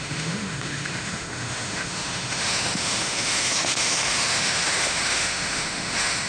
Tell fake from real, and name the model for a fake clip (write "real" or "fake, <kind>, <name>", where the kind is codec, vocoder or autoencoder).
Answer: fake, autoencoder, DAC-VAE